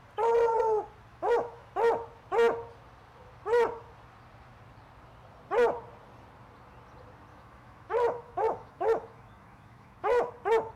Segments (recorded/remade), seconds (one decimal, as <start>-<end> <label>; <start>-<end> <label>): 0.0-1.1 recorded; 1.1-1.7 remade; 1.7-7.3 recorded; 7.3-10.3 remade; 10.3-10.8 recorded